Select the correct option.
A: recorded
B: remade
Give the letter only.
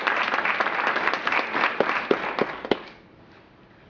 A